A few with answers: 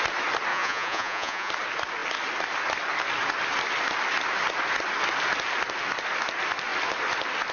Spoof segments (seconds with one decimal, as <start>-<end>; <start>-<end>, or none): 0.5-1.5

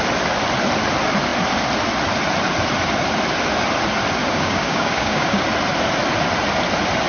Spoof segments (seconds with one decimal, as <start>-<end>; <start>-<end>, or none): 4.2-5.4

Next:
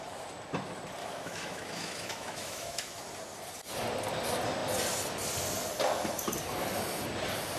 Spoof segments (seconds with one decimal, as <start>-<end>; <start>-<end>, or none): 1.0-3.0

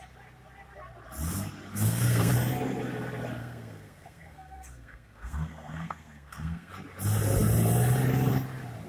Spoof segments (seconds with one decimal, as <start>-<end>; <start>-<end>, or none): 1.7-2.3; 3.4-6.7

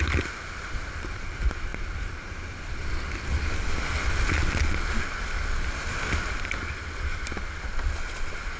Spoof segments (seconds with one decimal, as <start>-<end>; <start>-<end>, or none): none